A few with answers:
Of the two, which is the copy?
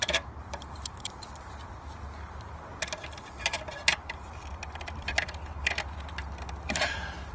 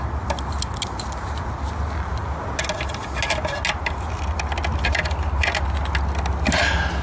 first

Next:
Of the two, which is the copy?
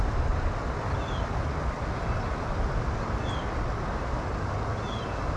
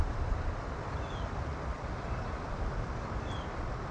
second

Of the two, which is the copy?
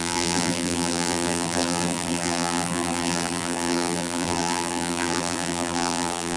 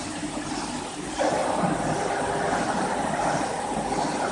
first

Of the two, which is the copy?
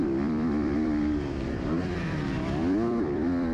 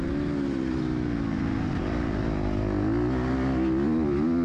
first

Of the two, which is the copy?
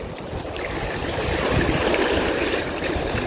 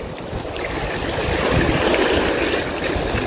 first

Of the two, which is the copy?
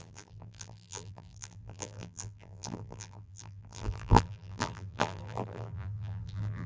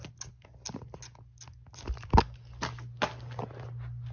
first